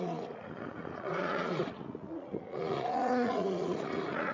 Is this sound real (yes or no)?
no